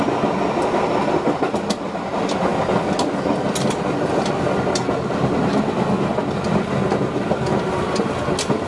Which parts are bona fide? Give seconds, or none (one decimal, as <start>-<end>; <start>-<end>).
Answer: 0.0-8.7